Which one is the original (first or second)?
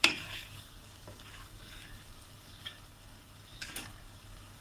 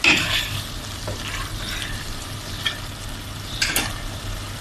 second